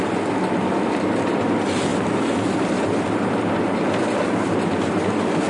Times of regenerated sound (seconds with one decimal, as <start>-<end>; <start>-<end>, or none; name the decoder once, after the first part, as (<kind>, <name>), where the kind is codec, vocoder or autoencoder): none